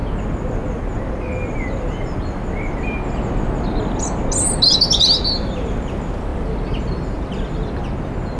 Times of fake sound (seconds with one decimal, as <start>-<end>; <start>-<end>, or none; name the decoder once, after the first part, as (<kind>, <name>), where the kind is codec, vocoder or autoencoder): none